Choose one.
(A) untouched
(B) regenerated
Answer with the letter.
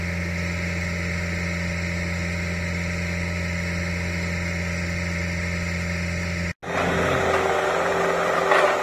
A